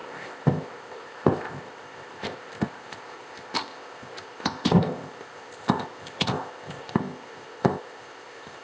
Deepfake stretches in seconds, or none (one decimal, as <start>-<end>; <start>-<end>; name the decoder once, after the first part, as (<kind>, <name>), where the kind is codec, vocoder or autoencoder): 0.0-8.6 (codec, ZipCodec)